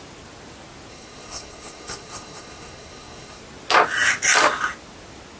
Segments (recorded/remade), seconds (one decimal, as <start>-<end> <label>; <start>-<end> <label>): 0.0-0.9 recorded; 0.9-3.4 remade; 3.4-5.4 recorded